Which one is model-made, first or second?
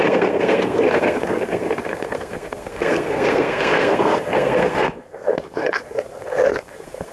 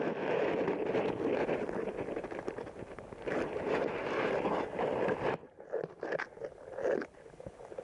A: first